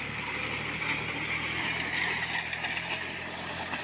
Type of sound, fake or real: real